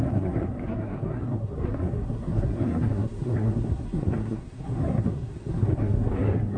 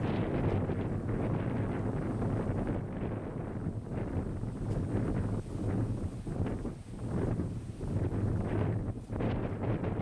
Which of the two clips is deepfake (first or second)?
first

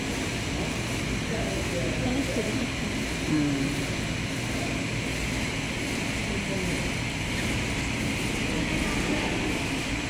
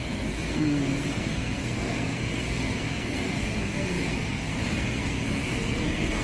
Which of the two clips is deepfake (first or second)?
second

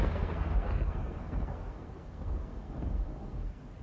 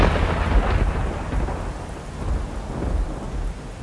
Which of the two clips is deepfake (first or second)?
first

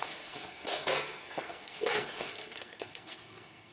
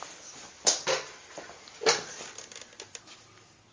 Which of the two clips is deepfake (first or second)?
first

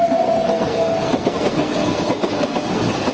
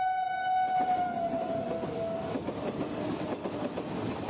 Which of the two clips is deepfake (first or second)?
first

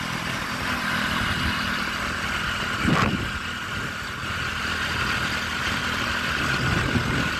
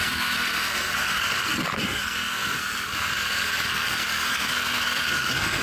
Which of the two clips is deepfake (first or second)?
second